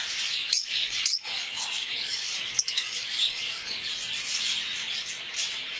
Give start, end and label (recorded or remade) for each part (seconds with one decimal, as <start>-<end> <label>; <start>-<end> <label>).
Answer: 0.0-0.4 recorded; 0.4-3.9 remade; 3.9-5.8 recorded